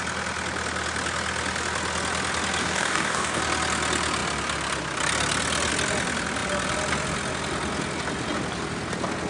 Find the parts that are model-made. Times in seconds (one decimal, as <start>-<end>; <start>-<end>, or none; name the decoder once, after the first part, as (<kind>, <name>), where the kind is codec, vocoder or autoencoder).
2.6-3.4 (codec, DAC)